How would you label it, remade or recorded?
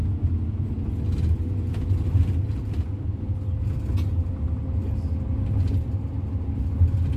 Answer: recorded